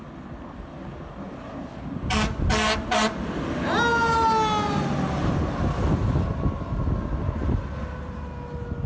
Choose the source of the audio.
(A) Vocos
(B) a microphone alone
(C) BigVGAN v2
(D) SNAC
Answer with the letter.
B